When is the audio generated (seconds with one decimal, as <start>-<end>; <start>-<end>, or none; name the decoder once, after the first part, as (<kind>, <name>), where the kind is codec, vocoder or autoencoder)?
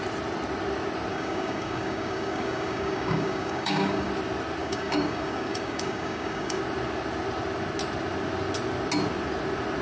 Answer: 1.1-4.1 (codec, DAC); 4.6-6.6